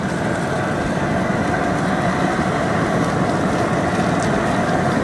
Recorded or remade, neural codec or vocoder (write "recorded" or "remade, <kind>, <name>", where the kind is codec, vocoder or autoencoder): recorded